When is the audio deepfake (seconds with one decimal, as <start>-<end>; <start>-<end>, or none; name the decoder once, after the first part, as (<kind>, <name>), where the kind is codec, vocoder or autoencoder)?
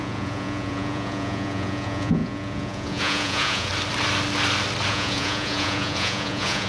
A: 0.0-3.7 (vocoder, Vocos); 4.9-6.7